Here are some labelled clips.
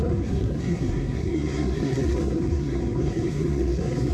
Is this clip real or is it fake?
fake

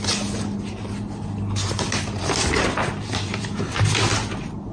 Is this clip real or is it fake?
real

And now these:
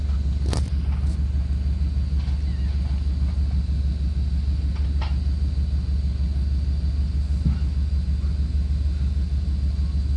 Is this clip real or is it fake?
real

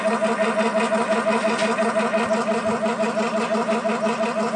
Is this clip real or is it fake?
real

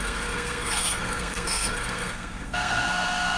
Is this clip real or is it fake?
fake